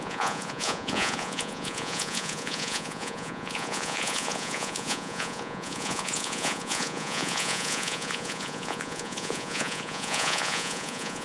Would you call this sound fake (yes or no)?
yes